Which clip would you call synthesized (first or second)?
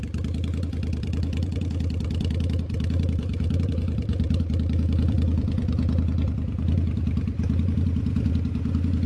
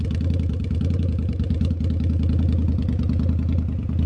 first